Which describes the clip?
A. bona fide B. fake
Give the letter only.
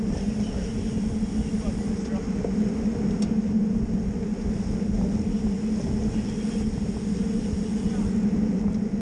A